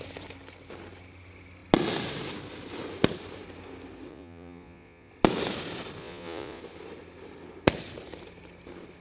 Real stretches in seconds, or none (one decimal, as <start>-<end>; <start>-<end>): 0.0-4.1; 5.1-6.0; 6.6-9.0